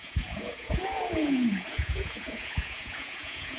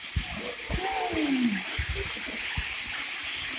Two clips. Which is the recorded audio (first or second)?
second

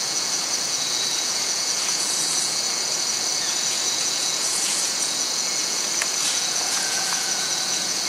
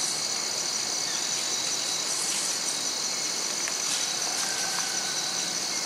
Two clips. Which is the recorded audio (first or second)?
second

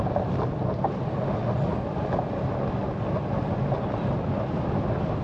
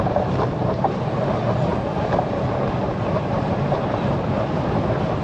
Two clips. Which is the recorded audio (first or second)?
first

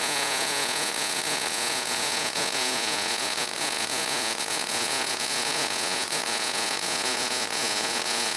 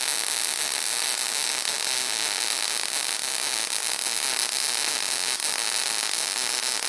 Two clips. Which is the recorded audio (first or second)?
second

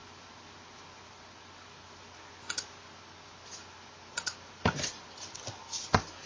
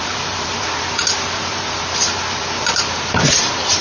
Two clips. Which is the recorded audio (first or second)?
first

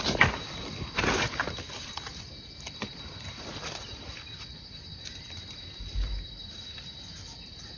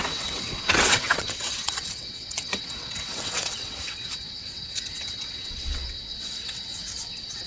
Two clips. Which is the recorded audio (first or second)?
first